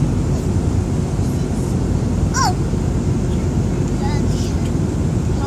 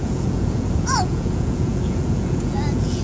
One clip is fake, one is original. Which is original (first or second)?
first